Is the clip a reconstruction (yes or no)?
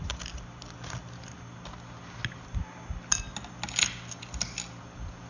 no